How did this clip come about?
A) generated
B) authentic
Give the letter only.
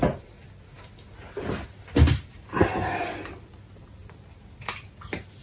B